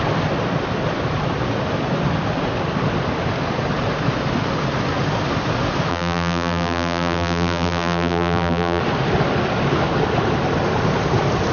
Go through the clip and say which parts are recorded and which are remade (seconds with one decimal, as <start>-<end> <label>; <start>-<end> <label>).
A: 0.0-5.9 recorded; 5.9-8.8 remade; 8.8-11.5 recorded